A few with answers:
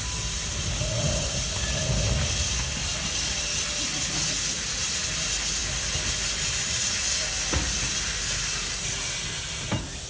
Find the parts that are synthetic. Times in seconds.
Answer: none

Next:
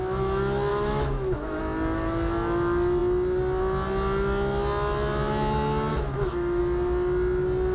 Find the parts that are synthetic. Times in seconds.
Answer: 0.7-1.6 (autoencoder, DAC-VAE); 5.9-6.6

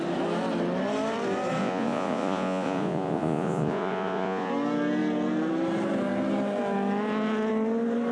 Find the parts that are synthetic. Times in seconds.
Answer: 1.6-4.5 (vocoder, Vocos)

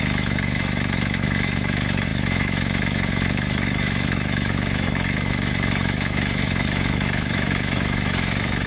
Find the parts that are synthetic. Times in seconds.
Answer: 0.0-8.7 (autoencoder, DAC-VAE)

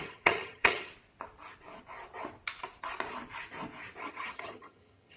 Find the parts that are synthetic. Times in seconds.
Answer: 0.0-0.9 (vocoder, HiFi-GAN); 4.0-5.2

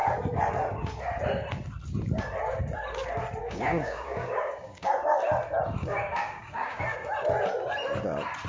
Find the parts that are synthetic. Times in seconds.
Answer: 3.4-4.9 (codec, DAC); 5.8-6.8

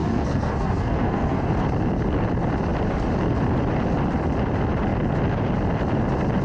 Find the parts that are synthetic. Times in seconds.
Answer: 0.0-1.5 (codec, SNAC)